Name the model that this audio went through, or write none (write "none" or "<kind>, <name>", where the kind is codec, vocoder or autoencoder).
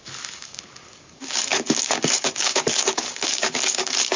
codec, DAC